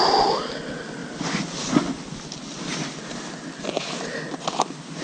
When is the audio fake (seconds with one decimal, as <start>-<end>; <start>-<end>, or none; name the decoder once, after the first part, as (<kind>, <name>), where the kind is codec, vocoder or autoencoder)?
none